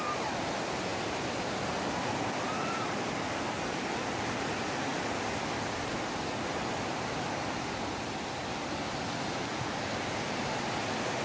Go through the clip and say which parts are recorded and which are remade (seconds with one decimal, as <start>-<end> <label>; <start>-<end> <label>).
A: 0.0-11.2 recorded